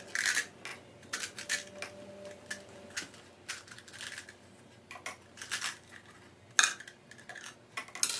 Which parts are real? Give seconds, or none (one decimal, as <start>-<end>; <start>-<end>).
0.0-8.2